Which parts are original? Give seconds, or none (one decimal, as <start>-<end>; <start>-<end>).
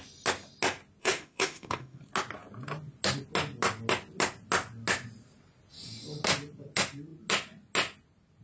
0.0-1.0; 2.0-8.4